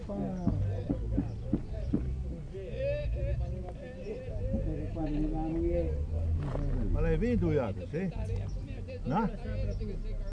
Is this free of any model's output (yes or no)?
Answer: yes